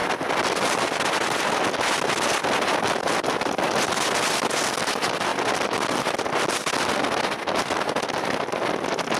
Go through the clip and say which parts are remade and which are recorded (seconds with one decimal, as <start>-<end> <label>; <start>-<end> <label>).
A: 0.0-1.5 remade; 1.5-9.2 recorded